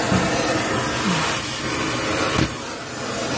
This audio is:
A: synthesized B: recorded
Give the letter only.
B